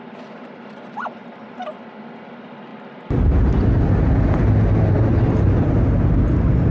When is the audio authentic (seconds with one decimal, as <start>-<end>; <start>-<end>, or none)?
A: 0.0-6.7